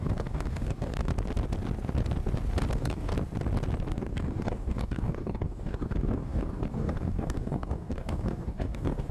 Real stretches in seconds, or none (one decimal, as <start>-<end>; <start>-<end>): 1.1-2.7; 3.1-3.9